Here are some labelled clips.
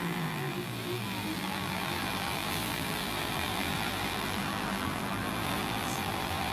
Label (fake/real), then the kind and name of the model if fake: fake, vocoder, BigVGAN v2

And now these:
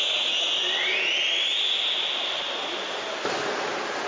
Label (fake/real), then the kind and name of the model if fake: real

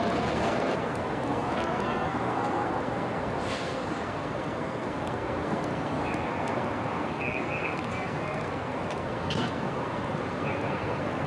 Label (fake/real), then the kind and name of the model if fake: fake, codec, SNAC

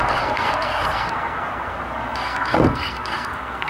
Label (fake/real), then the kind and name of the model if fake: fake, codec, SNAC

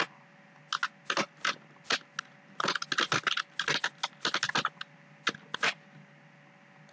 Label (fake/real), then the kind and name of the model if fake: real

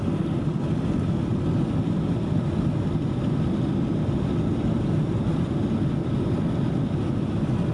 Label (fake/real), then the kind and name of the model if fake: real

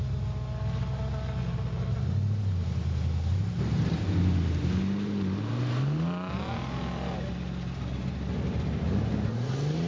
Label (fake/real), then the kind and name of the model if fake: real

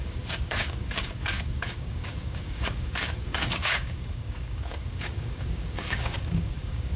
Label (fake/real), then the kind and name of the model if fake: fake, codec, DAC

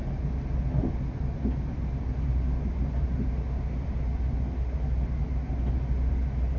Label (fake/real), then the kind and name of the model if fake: real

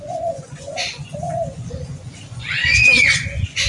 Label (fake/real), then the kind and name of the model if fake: fake, vocoder, Vocos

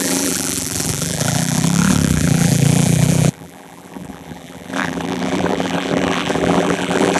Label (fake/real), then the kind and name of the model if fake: fake, vocoder, BigVGAN v2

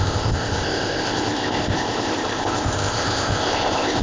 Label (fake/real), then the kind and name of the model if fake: fake, codec, ZipCodec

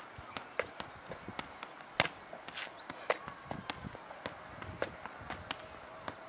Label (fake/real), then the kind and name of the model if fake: real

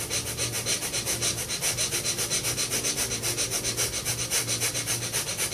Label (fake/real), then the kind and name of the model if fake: real